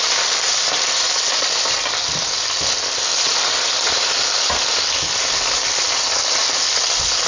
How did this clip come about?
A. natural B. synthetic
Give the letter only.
A